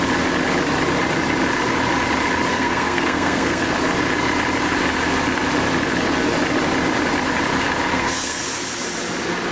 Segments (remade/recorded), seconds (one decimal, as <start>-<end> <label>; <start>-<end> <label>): 0.0-2.5 recorded; 2.5-3.6 remade; 3.6-7.9 recorded; 7.9-8.4 remade; 8.4-9.5 recorded